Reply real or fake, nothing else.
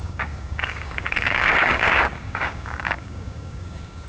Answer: fake